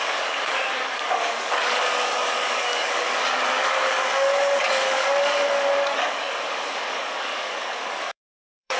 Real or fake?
fake